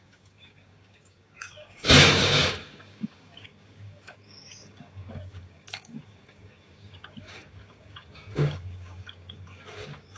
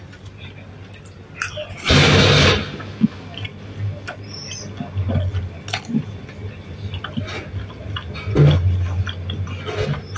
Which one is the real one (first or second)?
second